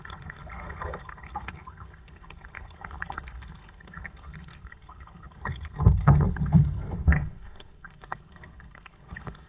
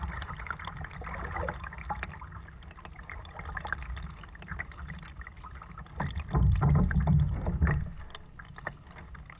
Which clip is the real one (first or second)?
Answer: second